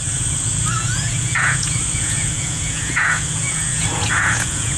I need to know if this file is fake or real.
fake